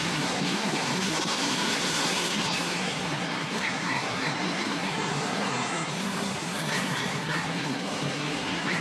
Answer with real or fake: fake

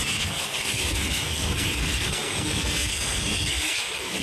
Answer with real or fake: fake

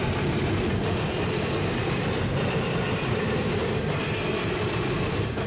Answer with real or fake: real